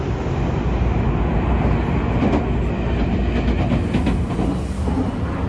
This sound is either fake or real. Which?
real